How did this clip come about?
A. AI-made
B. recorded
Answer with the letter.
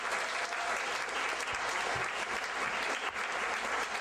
B